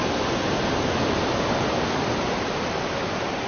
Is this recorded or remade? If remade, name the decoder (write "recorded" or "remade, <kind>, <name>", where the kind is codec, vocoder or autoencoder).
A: recorded